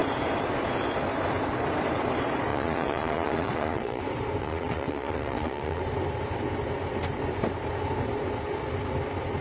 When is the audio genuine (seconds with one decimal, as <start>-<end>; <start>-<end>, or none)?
0.0-2.5; 4.0-4.4; 5.8-9.4